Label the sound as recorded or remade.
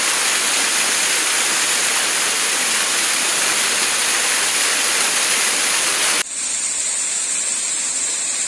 recorded